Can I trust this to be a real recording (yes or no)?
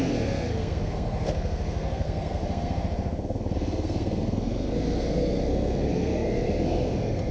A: no